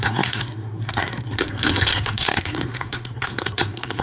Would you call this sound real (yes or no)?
no